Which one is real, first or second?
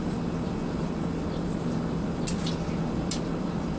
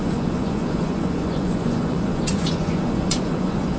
first